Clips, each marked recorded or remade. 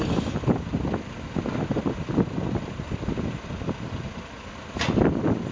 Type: recorded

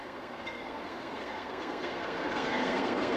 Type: remade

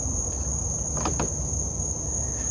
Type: recorded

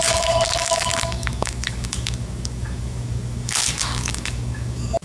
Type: remade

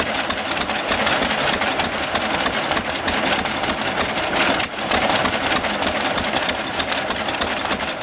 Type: recorded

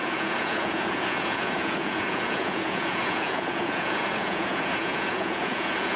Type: remade